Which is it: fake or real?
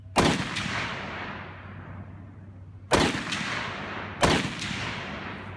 real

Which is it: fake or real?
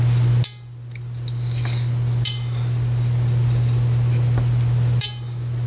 real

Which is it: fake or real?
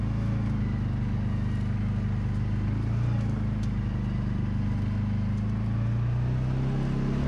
real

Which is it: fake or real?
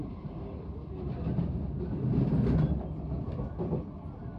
real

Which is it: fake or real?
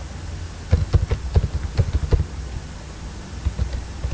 real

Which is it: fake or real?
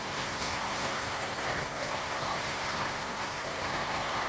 fake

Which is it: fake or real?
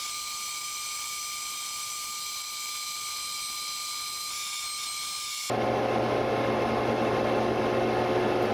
real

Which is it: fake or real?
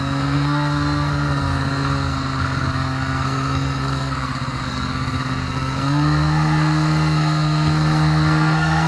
fake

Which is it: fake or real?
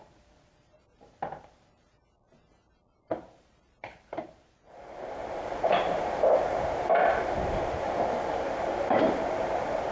fake